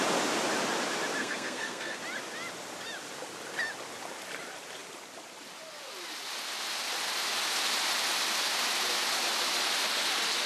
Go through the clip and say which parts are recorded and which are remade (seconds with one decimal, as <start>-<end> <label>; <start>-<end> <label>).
0.0-1.2 recorded; 1.2-2.0 remade; 2.0-10.5 recorded